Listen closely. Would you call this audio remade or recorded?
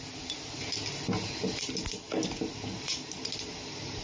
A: recorded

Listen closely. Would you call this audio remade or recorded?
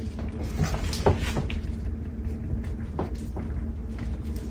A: recorded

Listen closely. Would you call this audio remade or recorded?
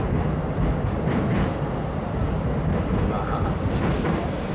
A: recorded